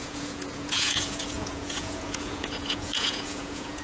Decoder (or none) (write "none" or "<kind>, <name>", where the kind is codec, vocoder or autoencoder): vocoder, Vocos